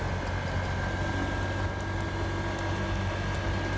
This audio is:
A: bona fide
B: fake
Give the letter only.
A